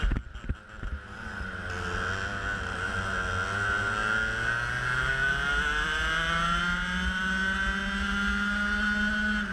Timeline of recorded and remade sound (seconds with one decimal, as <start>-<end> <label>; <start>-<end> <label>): 0.0-9.5 recorded